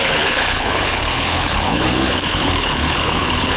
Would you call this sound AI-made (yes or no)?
yes